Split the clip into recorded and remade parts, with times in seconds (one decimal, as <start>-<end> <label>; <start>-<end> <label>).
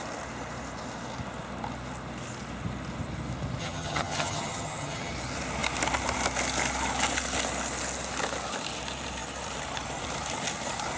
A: 0.0-3.6 recorded; 3.6-5.1 remade; 5.1-11.0 recorded